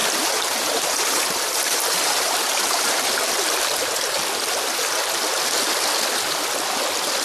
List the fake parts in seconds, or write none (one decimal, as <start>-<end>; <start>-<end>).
0.0-3.0